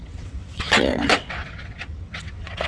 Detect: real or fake fake